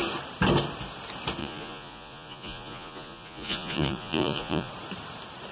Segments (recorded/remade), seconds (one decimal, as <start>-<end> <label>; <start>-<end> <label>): 0.0-1.4 recorded; 1.4-4.7 remade; 4.7-5.5 recorded